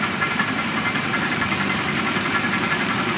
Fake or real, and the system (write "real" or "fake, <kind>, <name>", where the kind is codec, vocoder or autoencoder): fake, vocoder, BigVGAN v2